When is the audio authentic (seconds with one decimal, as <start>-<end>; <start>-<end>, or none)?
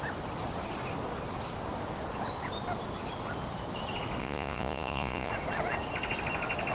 0.0-4.2; 5.3-6.7